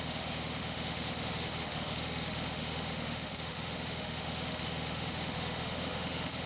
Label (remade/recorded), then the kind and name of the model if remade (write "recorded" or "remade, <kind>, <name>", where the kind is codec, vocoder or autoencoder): remade, autoencoder, DAC-VAE